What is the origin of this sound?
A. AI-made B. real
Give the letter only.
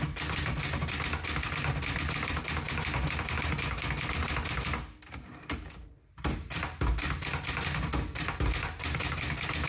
B